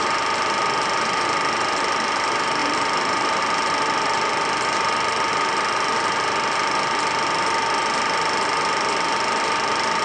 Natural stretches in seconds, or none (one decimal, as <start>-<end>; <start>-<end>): 0.0-2.6; 3.4-10.0